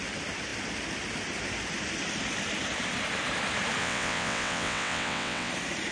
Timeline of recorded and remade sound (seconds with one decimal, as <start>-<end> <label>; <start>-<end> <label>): 0.0-3.8 recorded; 3.8-5.5 remade; 5.5-5.9 recorded